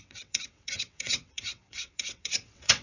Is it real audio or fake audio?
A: fake